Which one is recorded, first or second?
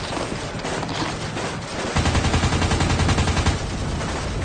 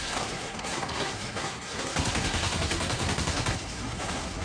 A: first